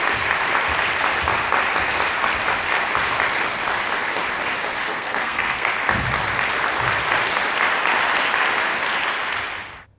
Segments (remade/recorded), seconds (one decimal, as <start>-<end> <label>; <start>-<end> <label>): 0.0-4.9 recorded; 4.9-5.7 remade; 5.7-10.0 recorded